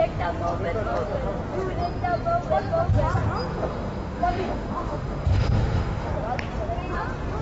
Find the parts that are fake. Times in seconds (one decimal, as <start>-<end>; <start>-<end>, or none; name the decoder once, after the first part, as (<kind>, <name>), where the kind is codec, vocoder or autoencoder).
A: 3.5-6.1 (autoencoder, DAC-VAE)